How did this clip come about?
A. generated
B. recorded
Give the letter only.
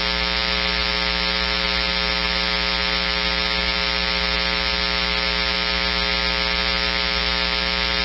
B